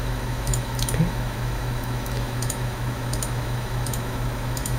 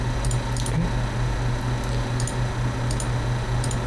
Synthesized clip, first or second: first